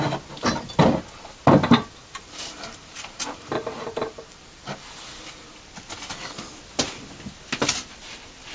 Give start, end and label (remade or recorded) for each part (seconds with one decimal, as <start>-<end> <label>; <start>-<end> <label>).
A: 0.0-2.0 recorded; 2.0-4.4 remade; 4.4-8.5 recorded